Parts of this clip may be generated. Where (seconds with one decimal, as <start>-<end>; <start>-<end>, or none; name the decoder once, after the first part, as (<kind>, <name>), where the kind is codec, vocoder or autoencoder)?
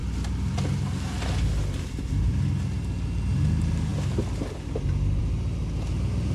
none